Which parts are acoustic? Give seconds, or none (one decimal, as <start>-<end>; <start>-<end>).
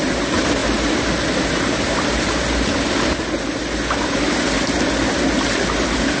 0.0-6.2